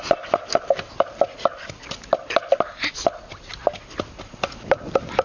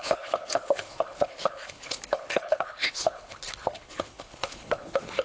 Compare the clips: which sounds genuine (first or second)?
first